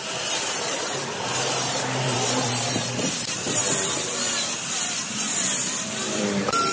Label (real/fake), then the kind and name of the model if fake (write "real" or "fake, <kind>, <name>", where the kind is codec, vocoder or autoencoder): fake, vocoder, BigVGAN v2